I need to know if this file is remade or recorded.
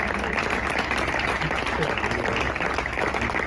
recorded